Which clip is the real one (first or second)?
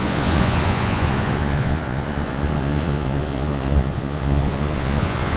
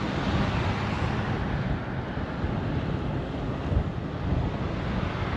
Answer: second